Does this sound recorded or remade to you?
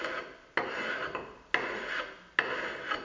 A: recorded